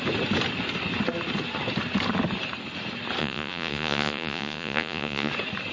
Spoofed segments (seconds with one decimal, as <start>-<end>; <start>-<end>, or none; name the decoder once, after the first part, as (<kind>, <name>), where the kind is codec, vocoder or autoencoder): 3.2-5.3 (vocoder, Vocos)